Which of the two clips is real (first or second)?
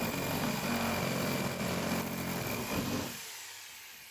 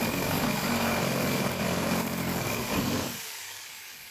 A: first